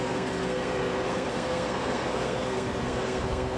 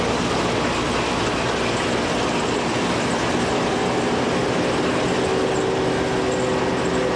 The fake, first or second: first